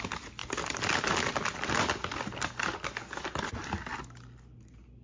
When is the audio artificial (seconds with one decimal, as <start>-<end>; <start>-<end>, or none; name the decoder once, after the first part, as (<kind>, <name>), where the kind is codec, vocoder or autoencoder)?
none